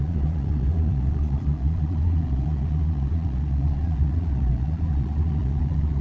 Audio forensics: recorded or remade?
remade